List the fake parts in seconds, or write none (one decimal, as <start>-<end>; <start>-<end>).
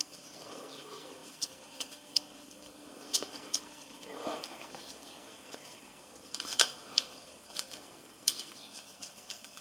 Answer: 0.0-9.6